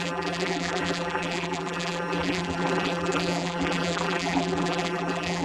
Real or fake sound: fake